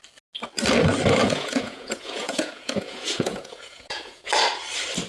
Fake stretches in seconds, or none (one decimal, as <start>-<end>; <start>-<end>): 1.2-4.3

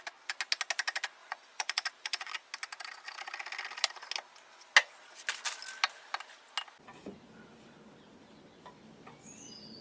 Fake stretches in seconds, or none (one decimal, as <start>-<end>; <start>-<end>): 1.2-2.3

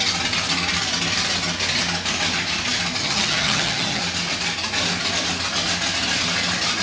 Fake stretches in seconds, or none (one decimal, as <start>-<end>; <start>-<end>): 3.0-4.0

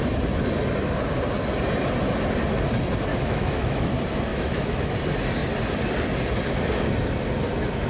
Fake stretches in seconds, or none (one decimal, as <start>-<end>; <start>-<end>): 3.1-3.9; 4.3-4.9

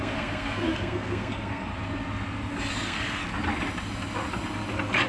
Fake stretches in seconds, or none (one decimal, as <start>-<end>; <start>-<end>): 0.0-1.7; 2.7-3.2

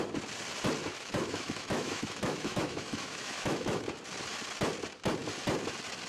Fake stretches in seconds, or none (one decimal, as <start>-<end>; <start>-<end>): 0.9-3.8

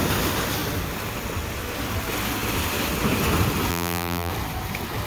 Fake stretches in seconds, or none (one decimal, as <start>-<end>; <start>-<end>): 3.7-4.3